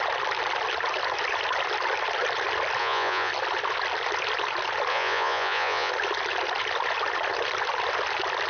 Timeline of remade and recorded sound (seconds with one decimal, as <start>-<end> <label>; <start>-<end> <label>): 0.0-2.8 recorded; 2.8-3.3 remade; 3.3-4.9 recorded; 4.9-5.9 remade; 5.9-8.5 recorded